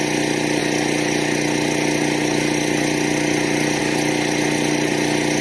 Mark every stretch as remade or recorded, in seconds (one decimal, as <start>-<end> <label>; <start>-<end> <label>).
0.0-5.4 recorded